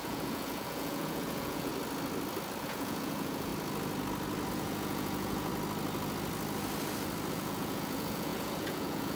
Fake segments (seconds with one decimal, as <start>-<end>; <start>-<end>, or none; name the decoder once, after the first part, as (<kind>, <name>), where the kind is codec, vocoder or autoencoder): 0.0-1.7 (vocoder, Vocos); 2.6-3.5; 4.5-5.5; 7.3-9.2